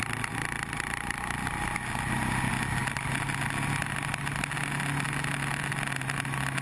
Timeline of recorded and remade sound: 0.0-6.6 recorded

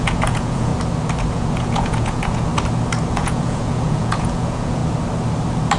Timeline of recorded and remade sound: 0.0-0.7 remade; 0.7-1.3 recorded; 1.3-2.5 remade; 2.5-3.1 recorded; 3.1-4.8 remade; 4.8-5.8 recorded

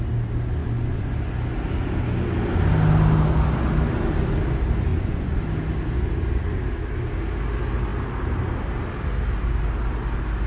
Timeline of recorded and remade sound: 0.0-0.6 recorded; 0.6-1.3 remade; 1.3-4.9 recorded; 4.9-5.4 remade; 5.4-10.5 recorded

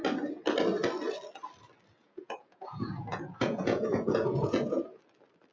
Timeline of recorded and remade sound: 0.0-2.0 recorded; 2.0-5.0 remade; 5.0-5.5 recorded

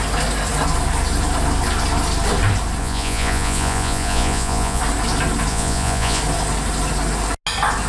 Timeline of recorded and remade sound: 0.0-2.8 recorded; 2.8-4.8 remade; 4.8-5.5 recorded; 5.5-6.2 remade; 6.2-7.9 recorded

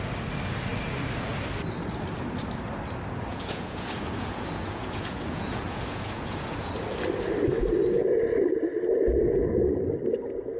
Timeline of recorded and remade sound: 0.0-3.3 recorded; 3.3-6.7 remade; 6.7-10.6 recorded